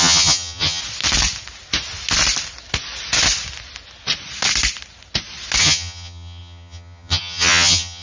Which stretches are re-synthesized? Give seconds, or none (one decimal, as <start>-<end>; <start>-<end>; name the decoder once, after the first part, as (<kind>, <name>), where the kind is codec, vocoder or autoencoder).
0.0-0.8 (vocoder, HiFi-GAN); 5.6-8.0